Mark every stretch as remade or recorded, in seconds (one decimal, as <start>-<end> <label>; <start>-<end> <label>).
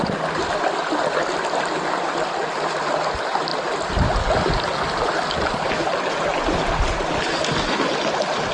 0.0-8.5 recorded